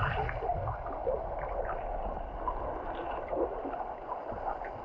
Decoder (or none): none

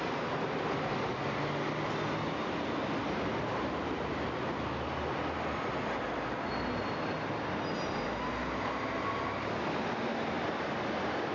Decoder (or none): none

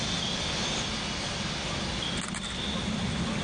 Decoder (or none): none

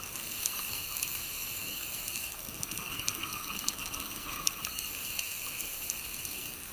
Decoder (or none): codec, SNAC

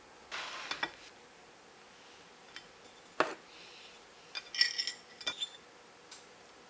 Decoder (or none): none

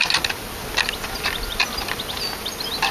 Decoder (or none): none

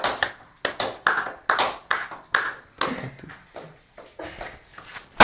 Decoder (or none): none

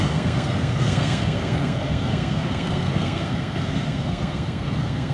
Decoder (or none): codec, SNAC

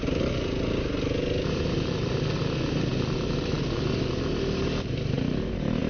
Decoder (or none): none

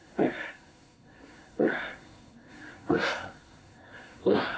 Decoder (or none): codec, SNAC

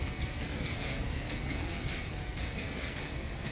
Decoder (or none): codec, SNAC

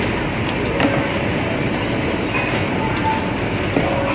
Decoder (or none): none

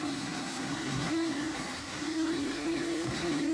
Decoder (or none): codec, SNAC